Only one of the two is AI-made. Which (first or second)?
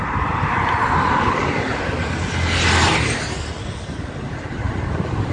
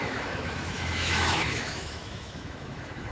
second